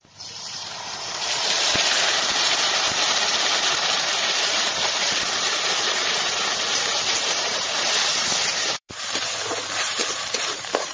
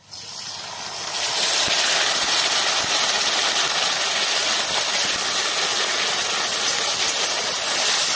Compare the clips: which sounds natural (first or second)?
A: second